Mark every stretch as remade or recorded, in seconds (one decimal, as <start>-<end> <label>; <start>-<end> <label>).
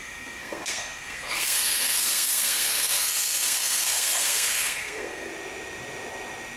0.0-5.3 remade; 5.3-6.6 recorded